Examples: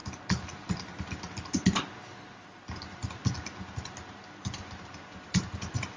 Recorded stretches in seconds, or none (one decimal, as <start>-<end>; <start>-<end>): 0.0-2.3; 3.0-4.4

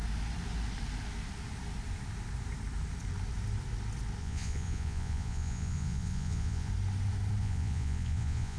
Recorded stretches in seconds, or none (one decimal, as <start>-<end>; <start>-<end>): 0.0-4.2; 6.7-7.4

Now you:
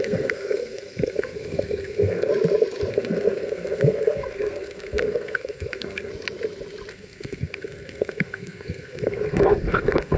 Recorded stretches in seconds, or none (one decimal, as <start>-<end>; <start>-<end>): 2.3-2.9; 6.1-6.9

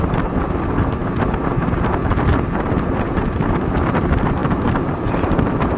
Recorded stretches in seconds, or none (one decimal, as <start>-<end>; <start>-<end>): 1.0-2.7

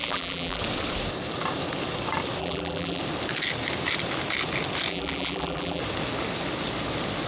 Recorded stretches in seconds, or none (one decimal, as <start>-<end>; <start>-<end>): 0.6-2.4; 3.0-4.9; 5.8-7.3

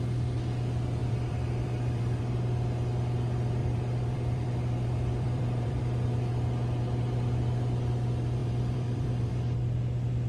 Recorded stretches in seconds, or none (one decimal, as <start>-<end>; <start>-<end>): 0.0-1.0; 2.2-3.6; 5.8-8.4; 9.3-10.3

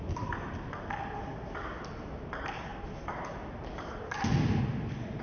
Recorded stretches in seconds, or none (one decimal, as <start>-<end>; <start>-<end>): 0.0-5.2

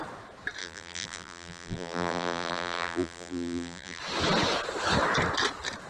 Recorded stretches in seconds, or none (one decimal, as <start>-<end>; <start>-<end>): 0.0-0.6; 4.0-5.9